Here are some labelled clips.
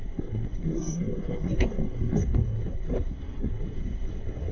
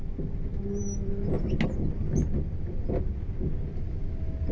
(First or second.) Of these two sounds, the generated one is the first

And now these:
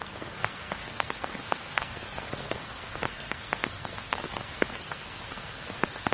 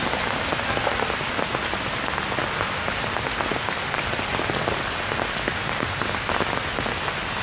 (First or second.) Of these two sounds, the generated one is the first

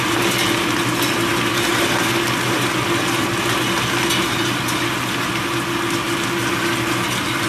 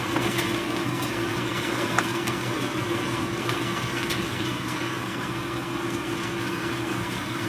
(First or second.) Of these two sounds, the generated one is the second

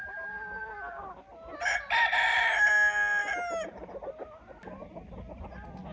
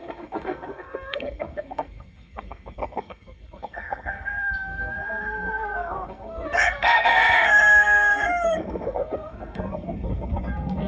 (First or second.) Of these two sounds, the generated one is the second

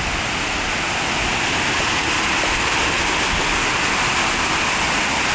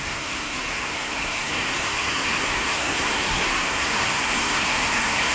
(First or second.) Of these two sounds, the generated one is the second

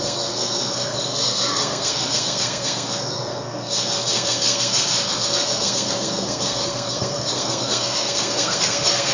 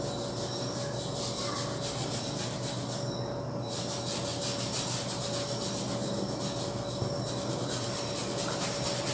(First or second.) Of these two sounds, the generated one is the first